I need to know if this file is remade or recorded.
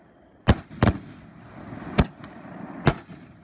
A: recorded